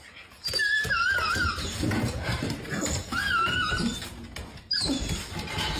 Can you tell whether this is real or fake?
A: real